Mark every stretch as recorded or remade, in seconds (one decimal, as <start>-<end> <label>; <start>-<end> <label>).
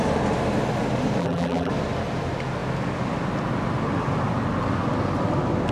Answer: 0.0-1.2 recorded; 1.2-1.7 remade; 1.7-5.7 recorded